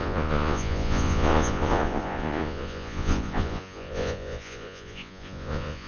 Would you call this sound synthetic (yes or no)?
yes